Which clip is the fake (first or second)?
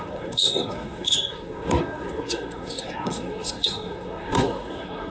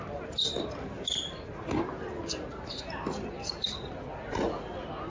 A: first